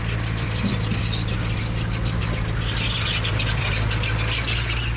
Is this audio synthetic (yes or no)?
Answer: no